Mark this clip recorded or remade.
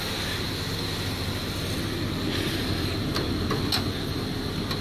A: recorded